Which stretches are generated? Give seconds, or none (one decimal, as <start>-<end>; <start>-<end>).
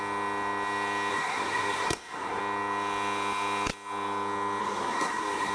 1.1-2.4; 4.6-5.5